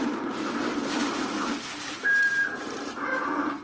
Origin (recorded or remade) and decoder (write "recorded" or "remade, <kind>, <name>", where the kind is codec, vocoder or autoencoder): remade, vocoder, BigVGAN v2